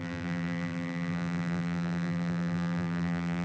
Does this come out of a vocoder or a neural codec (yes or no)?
yes